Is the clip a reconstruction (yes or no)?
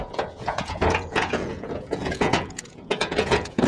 yes